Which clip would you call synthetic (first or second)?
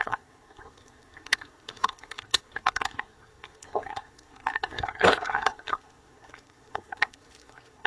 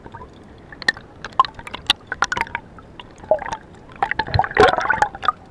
first